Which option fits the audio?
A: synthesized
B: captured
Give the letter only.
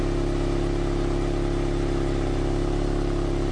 B